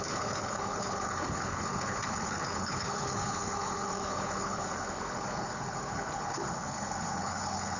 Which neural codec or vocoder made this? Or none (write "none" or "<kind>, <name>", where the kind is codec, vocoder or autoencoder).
codec, HILCodec